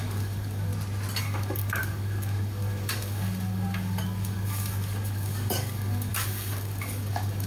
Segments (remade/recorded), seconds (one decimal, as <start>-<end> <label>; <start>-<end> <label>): 0.0-0.7 remade; 0.7-1.2 recorded; 1.2-7.5 remade